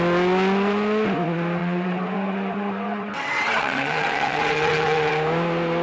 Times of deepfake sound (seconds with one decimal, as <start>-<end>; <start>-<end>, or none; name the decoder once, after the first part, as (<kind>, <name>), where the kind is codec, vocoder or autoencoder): 1.6-5.1 (vocoder, WaveNeXt)